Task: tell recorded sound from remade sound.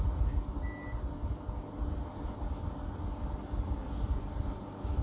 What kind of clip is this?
recorded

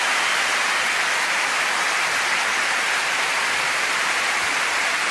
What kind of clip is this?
recorded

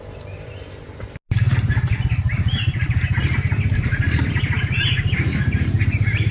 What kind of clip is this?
recorded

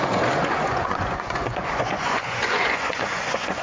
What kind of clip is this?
remade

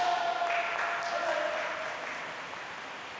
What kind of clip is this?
recorded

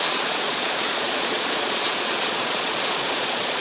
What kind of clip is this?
remade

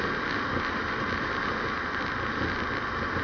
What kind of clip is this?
recorded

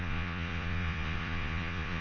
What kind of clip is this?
remade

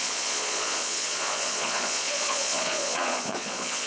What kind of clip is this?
remade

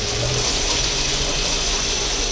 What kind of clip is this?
remade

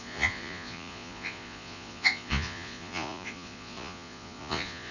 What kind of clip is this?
remade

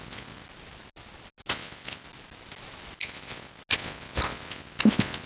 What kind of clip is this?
recorded